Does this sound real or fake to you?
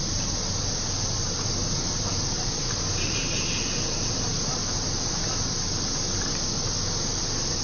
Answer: fake